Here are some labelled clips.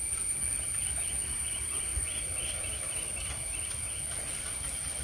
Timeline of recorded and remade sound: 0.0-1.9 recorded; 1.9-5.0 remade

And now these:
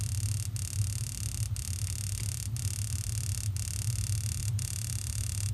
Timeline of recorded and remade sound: 0.0-4.4 recorded; 4.4-5.5 remade